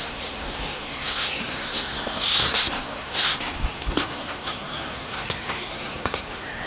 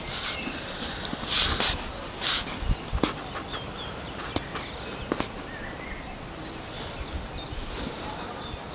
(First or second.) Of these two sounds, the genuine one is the second